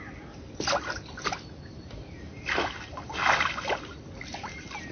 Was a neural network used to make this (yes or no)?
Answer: no